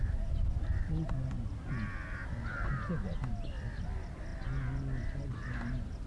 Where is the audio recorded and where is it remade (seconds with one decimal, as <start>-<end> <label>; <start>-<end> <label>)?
0.0-6.1 recorded